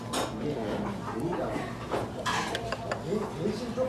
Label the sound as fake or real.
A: real